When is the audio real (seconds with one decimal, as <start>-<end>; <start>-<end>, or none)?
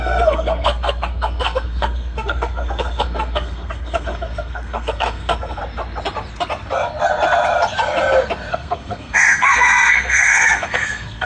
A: 5.6-8.5